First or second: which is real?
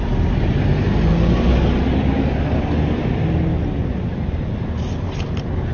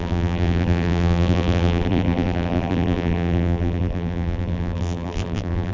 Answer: first